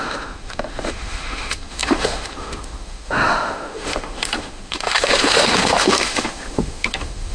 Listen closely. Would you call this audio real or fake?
fake